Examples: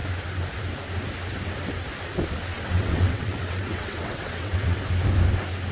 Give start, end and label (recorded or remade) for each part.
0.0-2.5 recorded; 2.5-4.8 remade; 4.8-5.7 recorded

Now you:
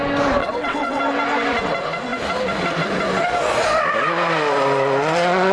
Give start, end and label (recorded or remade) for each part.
0.0-0.4 recorded; 0.4-1.0 remade; 1.0-5.5 recorded

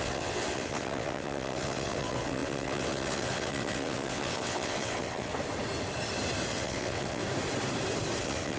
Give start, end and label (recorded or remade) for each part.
0.0-5.3 remade; 5.3-6.5 recorded; 6.5-7.2 remade; 7.2-8.2 recorded; 8.2-8.6 remade

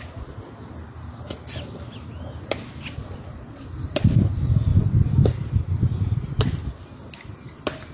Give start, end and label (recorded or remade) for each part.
0.0-7.9 recorded

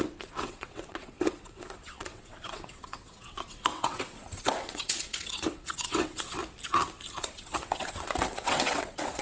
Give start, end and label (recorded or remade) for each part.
0.0-6.4 remade; 6.4-7.2 recorded; 7.2-9.2 remade

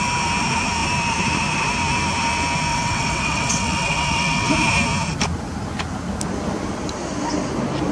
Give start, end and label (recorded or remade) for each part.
0.0-2.7 recorded; 2.7-4.5 remade; 4.5-7.9 recorded

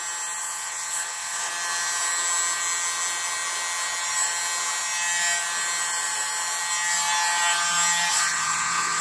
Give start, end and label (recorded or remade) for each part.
0.0-0.4 recorded; 0.4-1.5 remade; 1.5-8.1 recorded; 8.1-9.0 remade